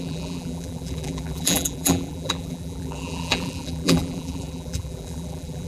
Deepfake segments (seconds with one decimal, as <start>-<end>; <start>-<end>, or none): 0.0-5.7